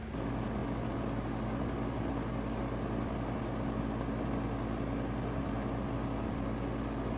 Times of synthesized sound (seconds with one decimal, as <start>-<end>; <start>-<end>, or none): none